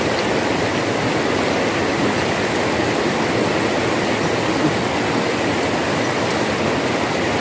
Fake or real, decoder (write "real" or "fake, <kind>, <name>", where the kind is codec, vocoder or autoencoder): real